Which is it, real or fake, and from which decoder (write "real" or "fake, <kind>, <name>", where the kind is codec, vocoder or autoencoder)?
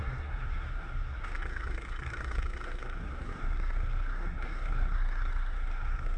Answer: fake, codec, SNAC